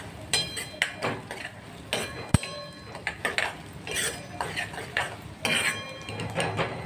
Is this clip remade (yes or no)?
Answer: no